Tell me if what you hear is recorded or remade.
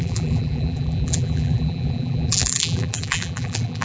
remade